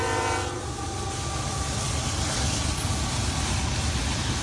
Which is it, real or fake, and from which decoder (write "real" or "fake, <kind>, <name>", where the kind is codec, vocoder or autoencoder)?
real